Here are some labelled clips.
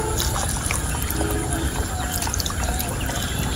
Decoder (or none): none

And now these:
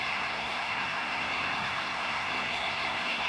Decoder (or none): codec, SNAC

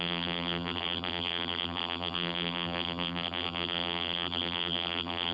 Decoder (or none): vocoder, BigVGAN v2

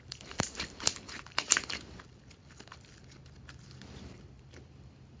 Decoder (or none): vocoder, BigVGAN v2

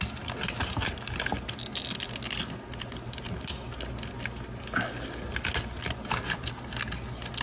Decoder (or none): none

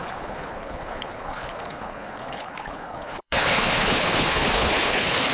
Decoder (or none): codec, HILCodec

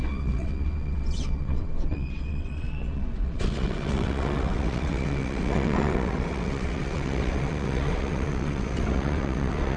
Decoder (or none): vocoder, WaveNeXt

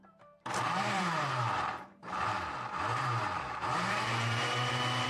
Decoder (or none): vocoder, BigVGAN v2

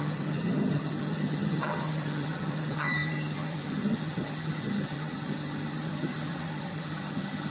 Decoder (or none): vocoder, HiFi-GAN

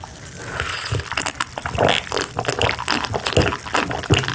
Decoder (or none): none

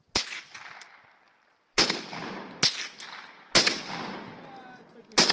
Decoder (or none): none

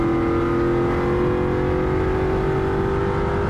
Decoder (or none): none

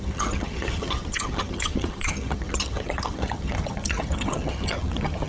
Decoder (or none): vocoder, HiFi-GAN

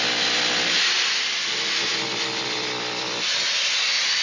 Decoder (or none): none